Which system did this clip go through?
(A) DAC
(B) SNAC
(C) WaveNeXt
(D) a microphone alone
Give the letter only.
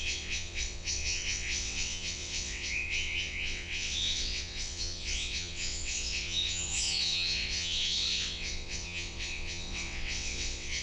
C